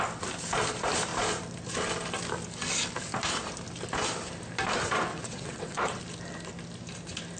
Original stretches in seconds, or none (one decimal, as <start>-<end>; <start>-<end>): 0.0-5.1; 6.0-7.4

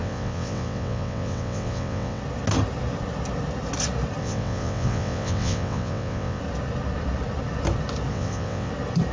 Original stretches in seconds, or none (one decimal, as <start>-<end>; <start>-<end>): 2.2-4.2; 6.4-8.1; 8.7-9.1